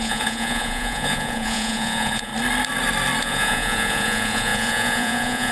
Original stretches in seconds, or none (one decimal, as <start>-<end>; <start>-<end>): 2.3-3.2